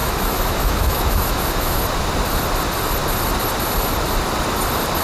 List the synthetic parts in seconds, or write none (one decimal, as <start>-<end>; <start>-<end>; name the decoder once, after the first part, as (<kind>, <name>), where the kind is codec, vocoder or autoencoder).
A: 0.0-1.8 (autoencoder, DAC-VAE)